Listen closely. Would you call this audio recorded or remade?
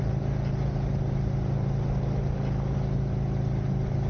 recorded